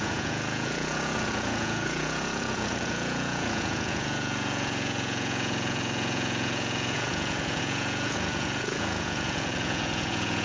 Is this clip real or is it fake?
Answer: fake